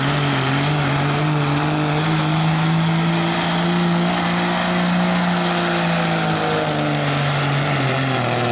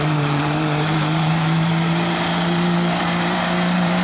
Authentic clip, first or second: first